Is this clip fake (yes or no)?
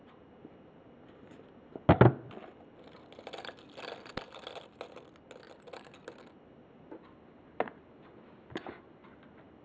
no